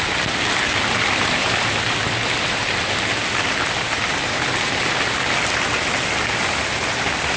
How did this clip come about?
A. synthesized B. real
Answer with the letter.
B